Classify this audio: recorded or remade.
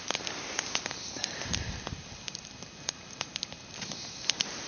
remade